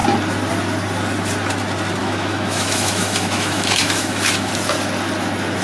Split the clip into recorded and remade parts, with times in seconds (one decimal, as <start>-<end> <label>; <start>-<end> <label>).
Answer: 0.0-2.0 recorded; 2.0-4.5 remade; 4.5-5.6 recorded